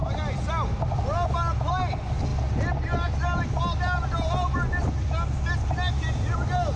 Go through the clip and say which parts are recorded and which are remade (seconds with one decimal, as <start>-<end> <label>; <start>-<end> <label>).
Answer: 0.0-6.8 recorded